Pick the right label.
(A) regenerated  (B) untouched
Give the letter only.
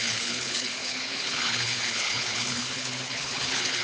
A